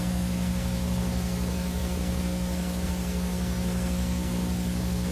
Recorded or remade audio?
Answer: remade